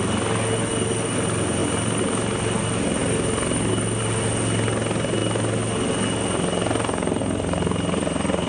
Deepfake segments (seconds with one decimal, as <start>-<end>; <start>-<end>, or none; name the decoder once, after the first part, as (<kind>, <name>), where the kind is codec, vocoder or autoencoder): none